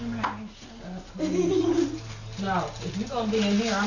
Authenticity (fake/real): real